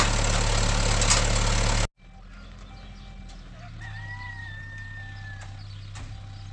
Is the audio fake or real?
real